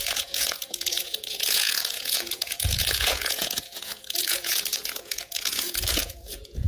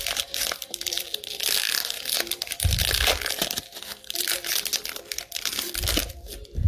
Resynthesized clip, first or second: first